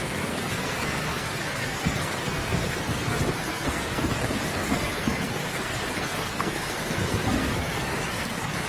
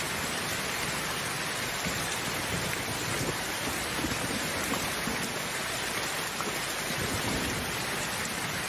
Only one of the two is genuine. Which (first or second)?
second